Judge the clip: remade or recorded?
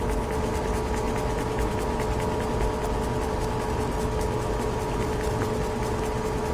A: recorded